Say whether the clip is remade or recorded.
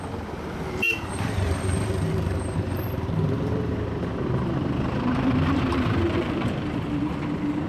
remade